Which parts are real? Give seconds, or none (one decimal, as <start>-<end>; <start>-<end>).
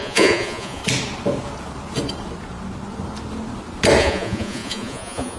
0.8-4.0